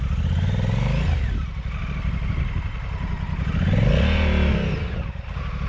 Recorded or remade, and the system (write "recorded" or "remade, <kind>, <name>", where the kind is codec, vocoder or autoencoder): recorded